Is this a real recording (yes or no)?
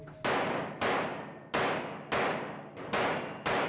yes